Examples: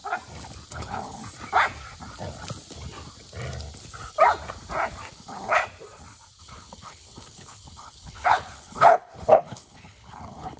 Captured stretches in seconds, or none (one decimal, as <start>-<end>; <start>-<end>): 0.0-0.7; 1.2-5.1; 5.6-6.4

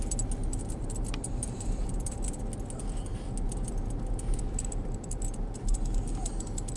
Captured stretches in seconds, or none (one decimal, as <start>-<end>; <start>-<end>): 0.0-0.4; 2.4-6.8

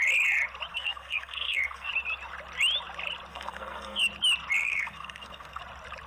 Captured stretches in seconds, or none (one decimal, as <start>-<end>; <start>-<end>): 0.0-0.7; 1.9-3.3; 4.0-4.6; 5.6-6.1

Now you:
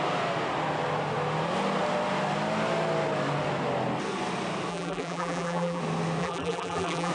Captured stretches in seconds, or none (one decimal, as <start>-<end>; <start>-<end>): 0.0-4.7; 5.8-6.2

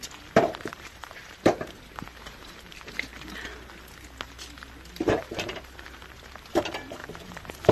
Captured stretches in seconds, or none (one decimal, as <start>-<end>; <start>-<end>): 3.1-4.9

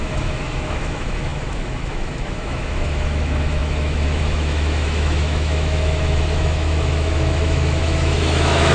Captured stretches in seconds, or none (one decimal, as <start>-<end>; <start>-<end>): none

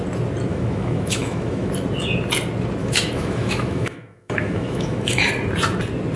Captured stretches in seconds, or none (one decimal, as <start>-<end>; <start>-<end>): 0.0-0.5; 1.7-2.8; 5.3-6.2